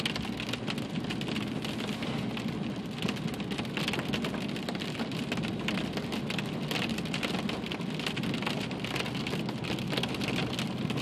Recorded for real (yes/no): yes